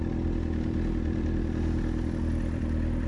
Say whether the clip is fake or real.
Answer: real